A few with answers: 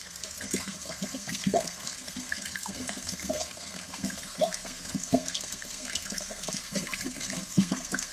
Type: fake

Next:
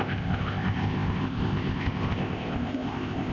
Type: fake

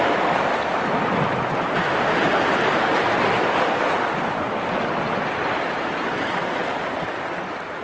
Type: real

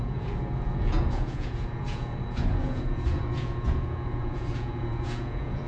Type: fake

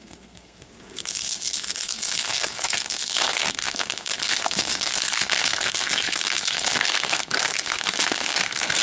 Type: fake